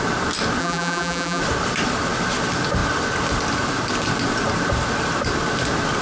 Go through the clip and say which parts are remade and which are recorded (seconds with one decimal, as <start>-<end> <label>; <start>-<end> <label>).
0.0-0.6 recorded; 0.6-1.4 remade; 1.4-6.0 recorded